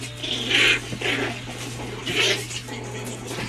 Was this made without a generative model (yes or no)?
yes